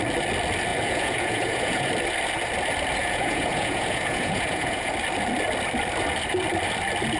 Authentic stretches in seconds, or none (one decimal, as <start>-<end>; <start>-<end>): 0.0-0.7; 1.9-3.0; 4.9-7.2